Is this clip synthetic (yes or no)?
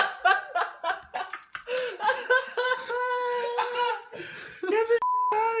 no